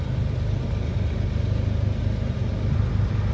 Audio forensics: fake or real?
real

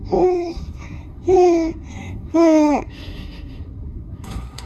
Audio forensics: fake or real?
fake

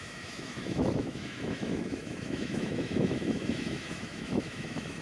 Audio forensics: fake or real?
fake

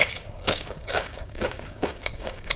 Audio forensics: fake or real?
fake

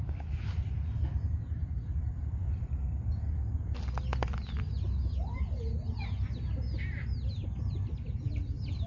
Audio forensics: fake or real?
real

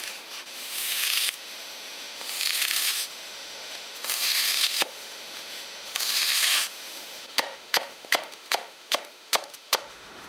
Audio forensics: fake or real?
fake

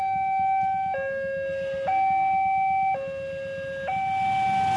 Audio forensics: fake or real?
real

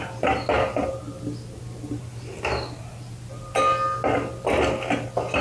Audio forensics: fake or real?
real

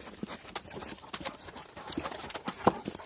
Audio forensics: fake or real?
real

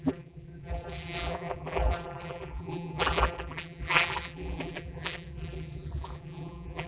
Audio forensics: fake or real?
fake